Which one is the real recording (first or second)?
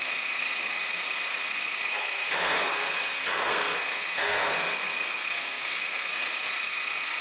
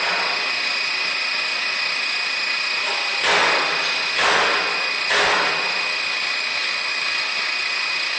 second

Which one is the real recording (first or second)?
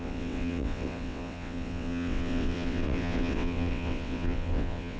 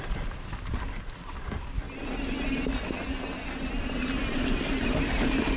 second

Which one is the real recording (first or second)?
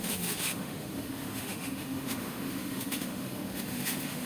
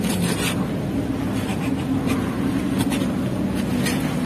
second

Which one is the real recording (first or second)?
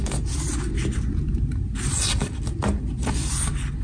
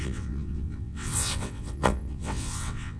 first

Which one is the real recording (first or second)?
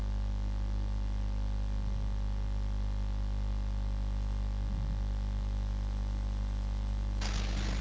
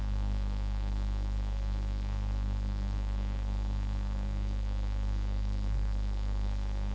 first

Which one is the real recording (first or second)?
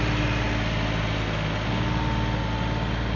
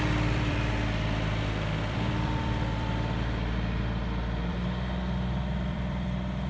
first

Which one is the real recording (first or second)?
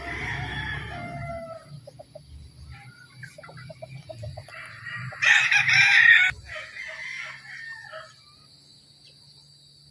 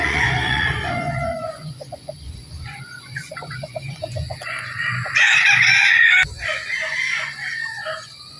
first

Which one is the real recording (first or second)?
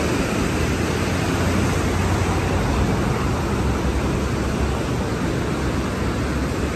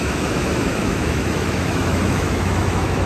first